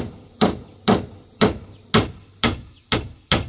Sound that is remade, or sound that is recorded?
recorded